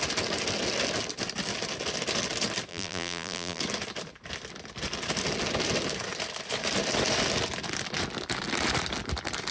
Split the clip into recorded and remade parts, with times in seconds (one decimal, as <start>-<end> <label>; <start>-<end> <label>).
0.0-2.7 recorded; 2.7-3.6 remade; 3.6-9.5 recorded